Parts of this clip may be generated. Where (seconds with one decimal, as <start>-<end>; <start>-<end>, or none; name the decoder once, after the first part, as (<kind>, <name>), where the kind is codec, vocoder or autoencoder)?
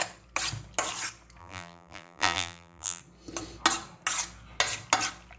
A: 1.4-3.0 (vocoder, BigVGAN v2)